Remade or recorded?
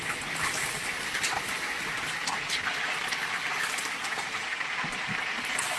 recorded